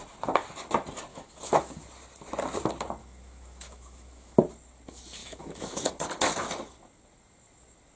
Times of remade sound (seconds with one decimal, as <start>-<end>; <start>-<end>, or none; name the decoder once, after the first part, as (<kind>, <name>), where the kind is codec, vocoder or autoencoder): 1.1-1.8 (autoencoder, DAC-VAE); 3.0-4.4; 5.2-5.9